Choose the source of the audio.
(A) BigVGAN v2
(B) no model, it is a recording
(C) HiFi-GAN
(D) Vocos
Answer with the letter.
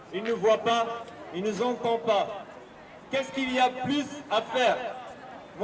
B